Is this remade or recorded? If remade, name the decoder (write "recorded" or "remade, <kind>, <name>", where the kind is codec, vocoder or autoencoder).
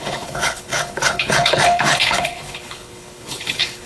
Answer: remade, codec, HILCodec